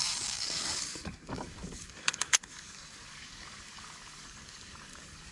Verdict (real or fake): fake